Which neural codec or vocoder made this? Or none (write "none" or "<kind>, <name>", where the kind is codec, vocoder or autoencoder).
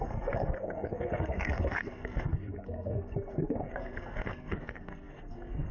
codec, SNAC